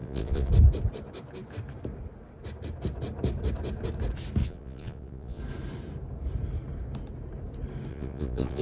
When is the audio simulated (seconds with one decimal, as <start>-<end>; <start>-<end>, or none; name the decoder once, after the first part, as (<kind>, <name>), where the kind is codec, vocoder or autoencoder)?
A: 0.0-0.5 (vocoder, Vocos); 4.4-5.4; 7.9-8.6